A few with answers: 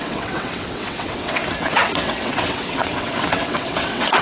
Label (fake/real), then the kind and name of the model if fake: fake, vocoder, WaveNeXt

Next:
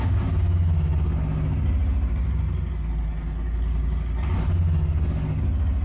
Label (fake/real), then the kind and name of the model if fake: real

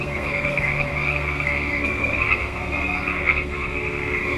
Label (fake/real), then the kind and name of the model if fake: fake, codec, SNAC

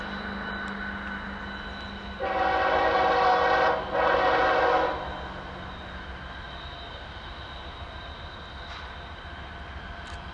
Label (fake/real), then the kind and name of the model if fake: real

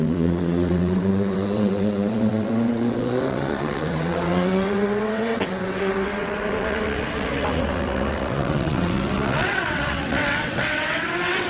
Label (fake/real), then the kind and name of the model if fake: fake, vocoder, WaveNeXt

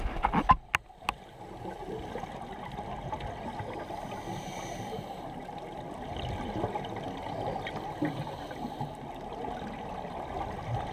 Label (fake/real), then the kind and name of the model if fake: real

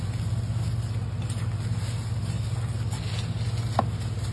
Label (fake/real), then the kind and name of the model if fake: real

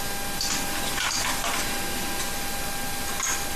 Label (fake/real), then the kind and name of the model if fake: real